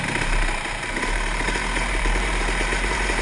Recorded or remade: remade